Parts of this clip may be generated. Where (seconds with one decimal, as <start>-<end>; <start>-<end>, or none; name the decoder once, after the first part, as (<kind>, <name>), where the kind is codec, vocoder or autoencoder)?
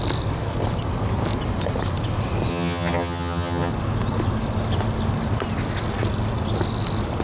2.5-3.7 (vocoder, HiFi-GAN)